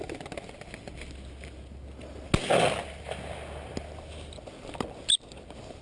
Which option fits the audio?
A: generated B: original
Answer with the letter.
B